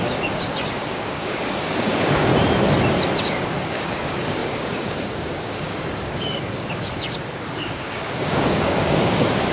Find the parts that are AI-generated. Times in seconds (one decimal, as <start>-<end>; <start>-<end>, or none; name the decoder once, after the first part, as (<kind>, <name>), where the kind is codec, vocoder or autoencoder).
0.0-2.3 (codec, DAC); 3.2-9.5

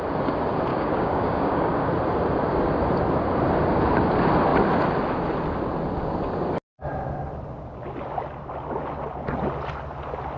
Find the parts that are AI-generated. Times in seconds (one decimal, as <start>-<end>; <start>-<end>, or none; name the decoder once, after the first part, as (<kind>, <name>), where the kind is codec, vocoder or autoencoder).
0.7-1.9 (codec, DAC)

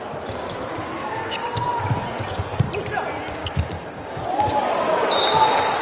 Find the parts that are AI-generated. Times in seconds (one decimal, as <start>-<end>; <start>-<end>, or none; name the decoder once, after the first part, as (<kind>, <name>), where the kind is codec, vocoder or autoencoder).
0.7-1.4 (codec, DAC); 3.4-4.2

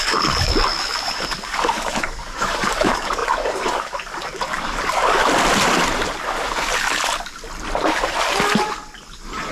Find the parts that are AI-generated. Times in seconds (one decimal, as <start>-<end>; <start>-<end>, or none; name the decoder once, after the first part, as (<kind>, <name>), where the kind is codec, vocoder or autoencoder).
0.0-5.2 (codec, DAC)

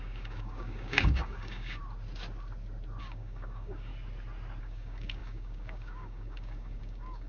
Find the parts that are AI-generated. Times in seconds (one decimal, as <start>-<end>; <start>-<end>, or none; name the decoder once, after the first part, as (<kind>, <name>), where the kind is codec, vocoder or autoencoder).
0.0-1.8 (codec, DAC); 3.0-3.9; 4.6-7.3